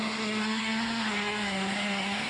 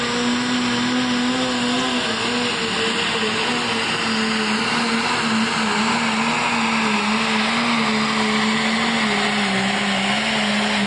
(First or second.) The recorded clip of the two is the second